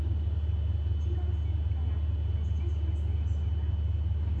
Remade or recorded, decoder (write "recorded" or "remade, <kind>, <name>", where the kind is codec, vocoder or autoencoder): recorded